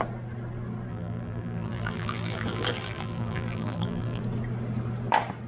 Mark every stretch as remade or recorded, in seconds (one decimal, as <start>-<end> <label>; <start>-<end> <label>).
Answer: 0.0-0.9 recorded; 0.9-4.2 remade; 4.2-5.5 recorded